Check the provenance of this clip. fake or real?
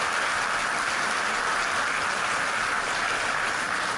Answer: real